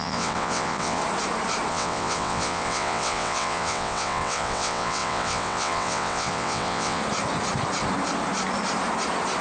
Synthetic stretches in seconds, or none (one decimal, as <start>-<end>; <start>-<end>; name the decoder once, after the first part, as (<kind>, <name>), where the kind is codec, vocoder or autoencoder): 0.0-1.0 (vocoder, WaveNeXt); 1.7-7.0